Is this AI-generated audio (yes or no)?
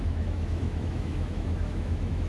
yes